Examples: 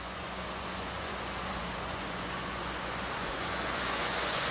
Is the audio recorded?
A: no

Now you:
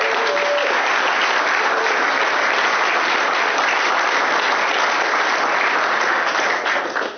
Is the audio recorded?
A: yes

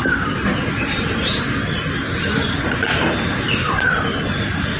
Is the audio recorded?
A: no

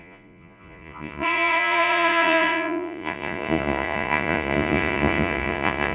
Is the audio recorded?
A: no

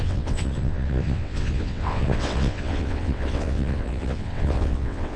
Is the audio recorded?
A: no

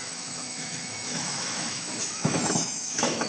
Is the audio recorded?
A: no